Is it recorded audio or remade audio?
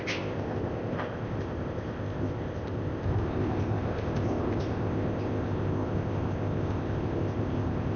remade